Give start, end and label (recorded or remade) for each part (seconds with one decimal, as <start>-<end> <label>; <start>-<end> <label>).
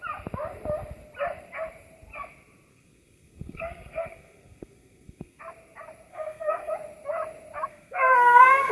0.0-2.7 recorded; 2.7-5.4 remade; 5.4-6.1 recorded; 6.1-6.7 remade; 6.7-7.7 recorded; 7.7-8.7 remade